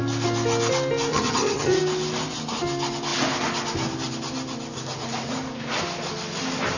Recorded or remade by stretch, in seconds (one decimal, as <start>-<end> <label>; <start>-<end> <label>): 0.0-1.1 recorded; 1.1-1.8 remade; 1.8-6.8 recorded